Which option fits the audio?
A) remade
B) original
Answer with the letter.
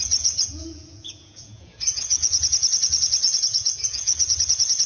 A